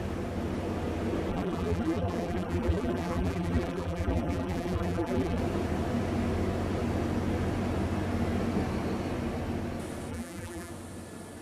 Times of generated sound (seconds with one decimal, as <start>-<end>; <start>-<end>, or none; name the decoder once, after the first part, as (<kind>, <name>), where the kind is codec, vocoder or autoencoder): 1.3-5.4 (vocoder, BigVGAN v2); 10.1-10.7